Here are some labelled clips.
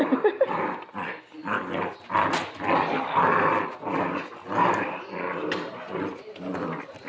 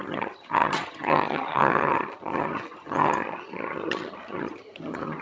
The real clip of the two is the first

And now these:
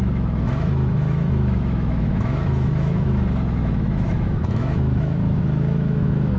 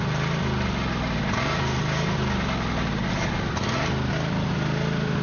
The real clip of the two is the second